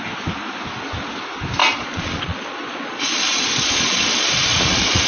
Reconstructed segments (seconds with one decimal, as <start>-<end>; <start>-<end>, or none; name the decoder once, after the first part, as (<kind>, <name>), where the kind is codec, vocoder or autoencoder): 1.6-5.1 (vocoder, Vocos)

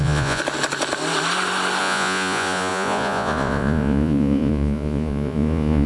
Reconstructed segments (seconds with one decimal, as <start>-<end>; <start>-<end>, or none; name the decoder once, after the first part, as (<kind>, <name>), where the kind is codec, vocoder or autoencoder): 0.0-0.4 (vocoder, Vocos); 1.8-5.9

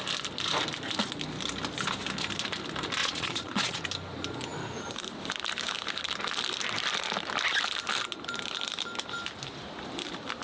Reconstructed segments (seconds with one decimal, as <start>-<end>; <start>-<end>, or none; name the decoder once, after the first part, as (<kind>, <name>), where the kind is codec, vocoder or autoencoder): 3.0-3.8 (vocoder, Vocos)

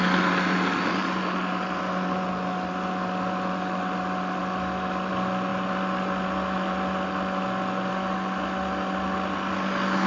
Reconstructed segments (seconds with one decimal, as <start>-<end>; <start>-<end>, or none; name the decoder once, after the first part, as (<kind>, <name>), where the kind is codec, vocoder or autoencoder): none

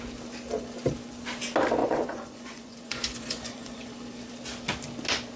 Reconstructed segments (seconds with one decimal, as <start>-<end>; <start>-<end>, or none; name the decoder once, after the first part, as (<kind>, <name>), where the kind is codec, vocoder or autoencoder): 1.8-3.9 (vocoder, Vocos)

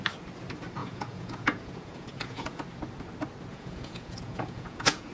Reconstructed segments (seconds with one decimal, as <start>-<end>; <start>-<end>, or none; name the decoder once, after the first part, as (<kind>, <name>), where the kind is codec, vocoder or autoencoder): 0.8-2.6 (vocoder, Vocos); 3.5-5.1

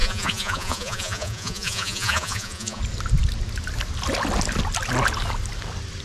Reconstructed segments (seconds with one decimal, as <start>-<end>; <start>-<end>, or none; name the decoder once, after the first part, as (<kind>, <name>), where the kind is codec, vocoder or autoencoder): 0.0-2.8 (vocoder, Vocos)